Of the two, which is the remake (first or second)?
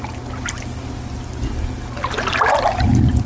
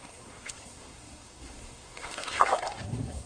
second